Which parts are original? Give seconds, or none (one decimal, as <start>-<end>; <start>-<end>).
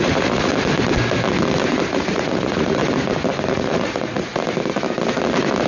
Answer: 0.5-1.9; 2.8-3.5; 4.3-5.7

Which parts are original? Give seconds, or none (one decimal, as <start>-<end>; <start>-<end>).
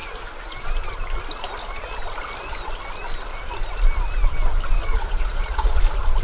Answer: 0.0-4.9; 5.8-6.2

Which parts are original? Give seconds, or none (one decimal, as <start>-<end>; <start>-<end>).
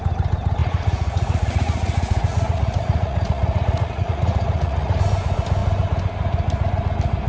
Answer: 0.0-0.6; 5.0-7.3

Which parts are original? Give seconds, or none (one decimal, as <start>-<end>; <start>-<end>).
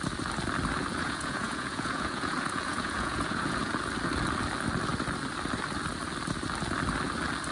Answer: 0.0-0.9; 3.7-7.5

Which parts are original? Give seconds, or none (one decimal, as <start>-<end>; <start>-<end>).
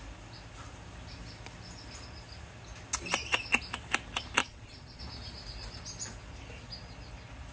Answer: 0.0-4.4; 5.0-7.5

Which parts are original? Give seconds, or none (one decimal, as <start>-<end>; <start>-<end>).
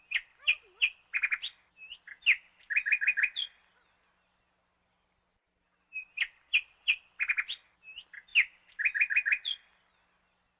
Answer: 0.0-10.6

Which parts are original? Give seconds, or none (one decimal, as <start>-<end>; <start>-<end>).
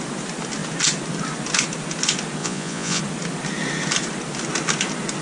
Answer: 0.0-2.4; 3.0-5.2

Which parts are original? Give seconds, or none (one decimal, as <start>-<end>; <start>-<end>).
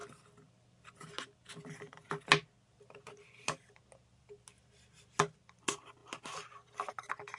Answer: 0.0-7.4